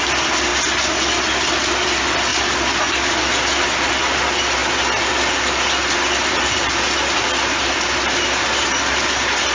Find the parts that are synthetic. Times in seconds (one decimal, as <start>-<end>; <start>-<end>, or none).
none